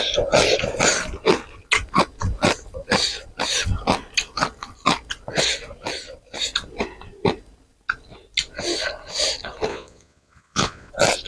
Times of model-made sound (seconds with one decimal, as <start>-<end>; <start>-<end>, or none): 9.7-10.9